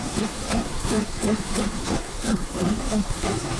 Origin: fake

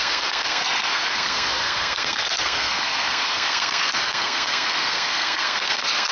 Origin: fake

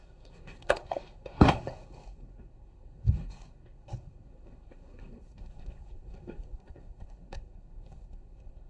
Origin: fake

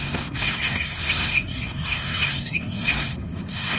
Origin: fake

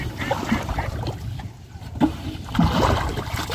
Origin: real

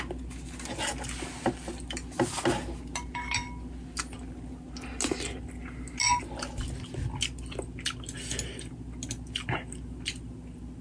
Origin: real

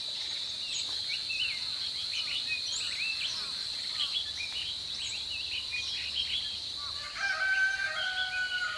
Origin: real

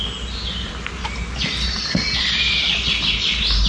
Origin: real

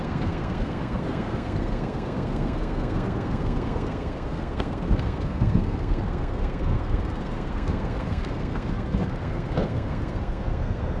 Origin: fake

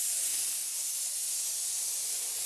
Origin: real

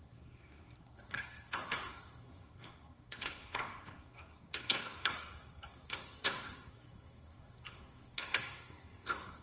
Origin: fake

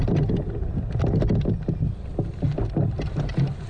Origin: real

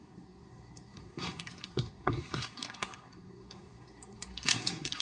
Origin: fake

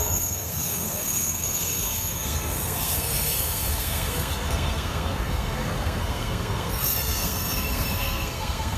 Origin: fake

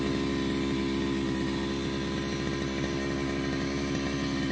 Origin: real